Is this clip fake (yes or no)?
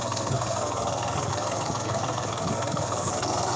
yes